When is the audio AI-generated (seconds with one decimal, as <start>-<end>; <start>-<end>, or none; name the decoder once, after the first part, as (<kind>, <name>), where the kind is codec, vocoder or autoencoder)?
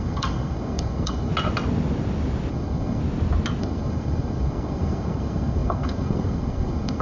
0.0-1.3 (codec, SNAC); 2.5-3.0; 3.6-7.0